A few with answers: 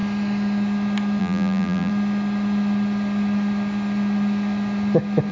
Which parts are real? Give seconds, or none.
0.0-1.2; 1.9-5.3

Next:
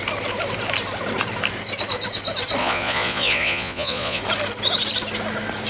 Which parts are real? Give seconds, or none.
0.0-2.6; 4.2-5.7

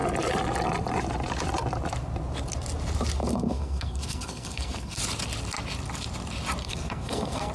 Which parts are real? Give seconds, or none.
0.0-3.2; 5.0-6.6

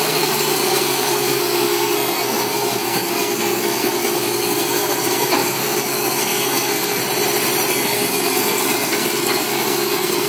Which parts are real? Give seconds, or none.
7.0-7.7

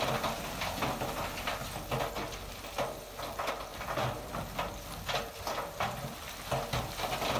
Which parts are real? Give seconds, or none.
0.0-3.7; 4.3-7.4